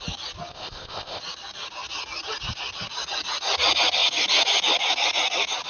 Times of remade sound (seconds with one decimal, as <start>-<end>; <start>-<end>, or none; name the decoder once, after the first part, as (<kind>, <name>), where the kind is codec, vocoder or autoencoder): 0.5-1.2 (codec, ZipCodec)